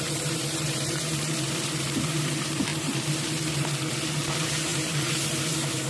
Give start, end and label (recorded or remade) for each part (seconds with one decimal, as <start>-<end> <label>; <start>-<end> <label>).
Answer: 0.0-5.9 remade